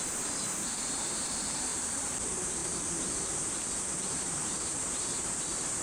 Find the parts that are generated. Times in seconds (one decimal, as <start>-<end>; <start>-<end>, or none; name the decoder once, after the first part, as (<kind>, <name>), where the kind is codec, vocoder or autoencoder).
0.0-1.7 (vocoder, BigVGAN v2); 2.2-5.8